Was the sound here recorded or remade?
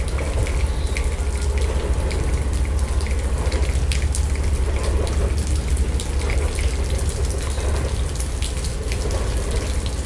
recorded